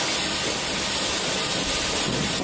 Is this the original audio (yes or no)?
yes